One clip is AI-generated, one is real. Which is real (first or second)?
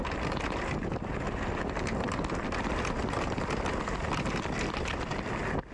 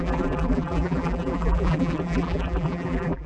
first